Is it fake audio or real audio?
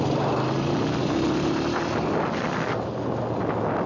real